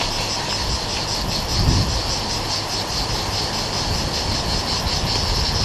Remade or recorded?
recorded